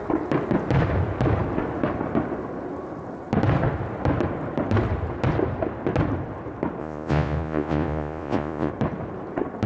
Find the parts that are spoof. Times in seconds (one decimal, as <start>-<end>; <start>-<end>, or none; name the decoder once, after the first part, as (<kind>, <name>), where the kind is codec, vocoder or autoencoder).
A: 6.8-8.7 (vocoder, Vocos)